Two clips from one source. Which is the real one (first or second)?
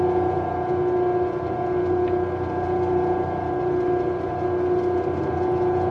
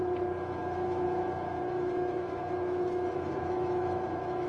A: first